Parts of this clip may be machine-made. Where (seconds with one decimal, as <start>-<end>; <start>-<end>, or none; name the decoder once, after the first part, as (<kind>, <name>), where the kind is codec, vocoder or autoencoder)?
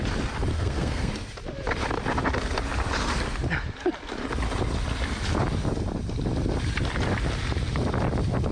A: 0.5-1.1 (codec, SNAC)